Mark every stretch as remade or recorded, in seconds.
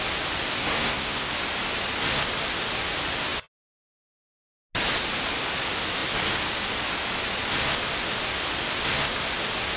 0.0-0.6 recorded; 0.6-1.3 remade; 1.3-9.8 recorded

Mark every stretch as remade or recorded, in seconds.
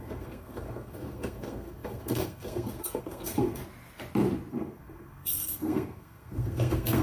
0.0-3.6 remade; 3.6-4.5 recorded; 4.5-7.0 remade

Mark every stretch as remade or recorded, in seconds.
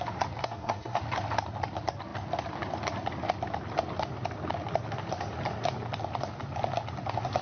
0.0-0.4 recorded; 0.4-1.0 remade; 1.0-7.4 recorded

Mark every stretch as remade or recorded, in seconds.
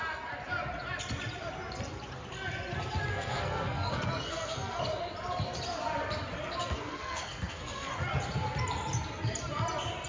0.0-3.1 recorded; 3.1-4.8 remade; 4.8-6.6 recorded; 6.6-7.9 remade; 7.9-10.1 recorded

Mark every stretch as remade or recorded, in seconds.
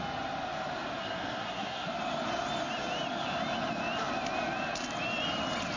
0.0-1.0 recorded; 1.0-1.9 remade; 1.9-5.8 recorded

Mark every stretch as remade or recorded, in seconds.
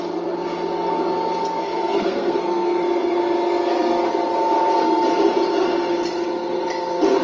0.0-1.6 recorded; 1.6-3.2 remade; 3.2-7.2 recorded